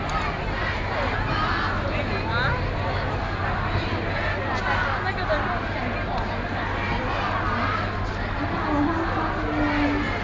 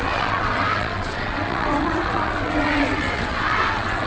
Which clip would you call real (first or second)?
first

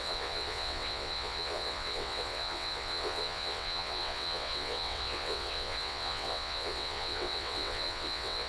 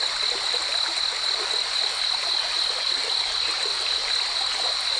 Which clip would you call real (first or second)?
second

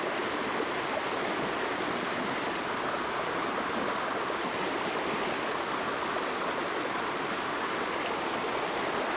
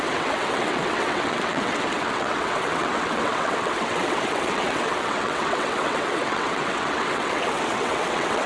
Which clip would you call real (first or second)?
first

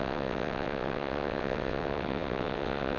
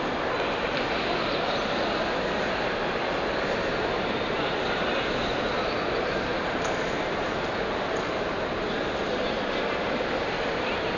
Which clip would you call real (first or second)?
second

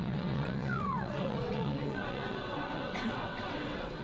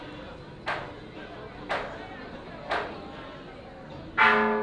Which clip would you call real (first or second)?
second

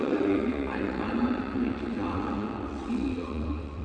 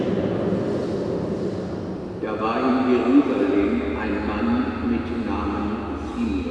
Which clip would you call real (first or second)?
second